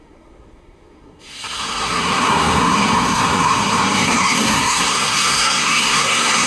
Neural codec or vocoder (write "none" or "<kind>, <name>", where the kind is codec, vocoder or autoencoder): codec, SNAC